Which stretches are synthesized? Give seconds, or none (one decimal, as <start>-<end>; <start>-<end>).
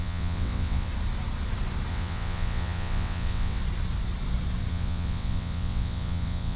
0.0-0.9; 1.9-3.6; 4.7-6.6